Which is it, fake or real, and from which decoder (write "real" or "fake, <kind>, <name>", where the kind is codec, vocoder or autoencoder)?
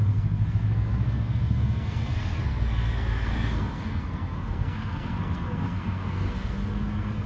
fake, codec, SNAC